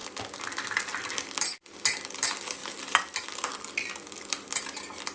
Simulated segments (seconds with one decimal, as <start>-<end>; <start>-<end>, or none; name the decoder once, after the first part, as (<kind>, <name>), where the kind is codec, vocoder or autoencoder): none